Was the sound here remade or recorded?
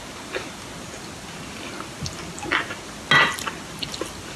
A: recorded